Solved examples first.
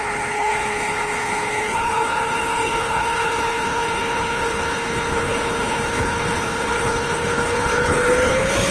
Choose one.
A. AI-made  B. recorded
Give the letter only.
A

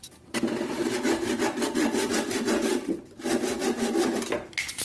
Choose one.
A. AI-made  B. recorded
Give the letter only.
B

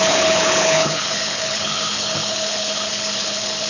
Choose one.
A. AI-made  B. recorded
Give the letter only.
A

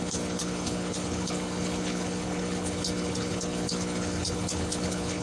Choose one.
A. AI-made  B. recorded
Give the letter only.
A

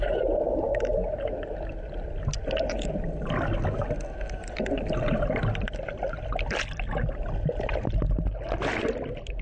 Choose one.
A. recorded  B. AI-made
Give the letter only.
A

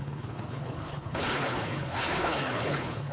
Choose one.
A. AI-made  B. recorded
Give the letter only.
A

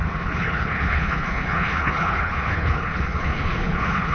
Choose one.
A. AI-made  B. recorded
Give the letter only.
A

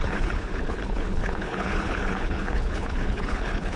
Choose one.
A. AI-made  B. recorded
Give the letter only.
A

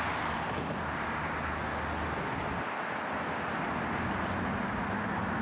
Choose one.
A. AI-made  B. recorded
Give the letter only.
B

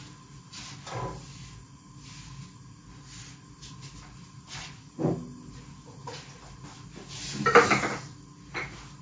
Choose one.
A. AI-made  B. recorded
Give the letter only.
B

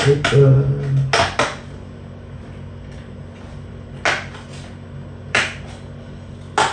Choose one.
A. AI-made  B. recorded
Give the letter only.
B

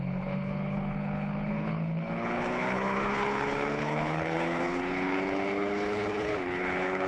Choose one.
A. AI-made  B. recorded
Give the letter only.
A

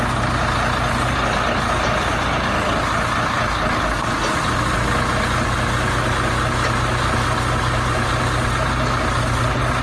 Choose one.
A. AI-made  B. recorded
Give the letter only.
B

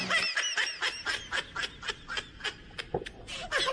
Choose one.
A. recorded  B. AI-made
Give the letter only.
A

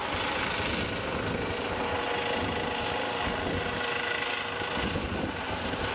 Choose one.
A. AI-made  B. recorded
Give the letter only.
B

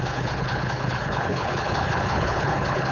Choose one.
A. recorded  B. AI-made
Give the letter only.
B